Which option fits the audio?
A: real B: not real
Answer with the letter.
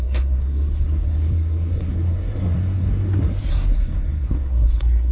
B